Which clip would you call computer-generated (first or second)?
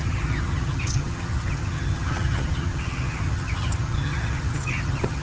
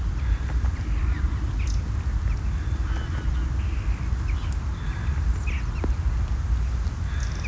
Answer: first